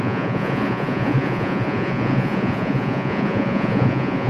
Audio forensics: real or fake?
fake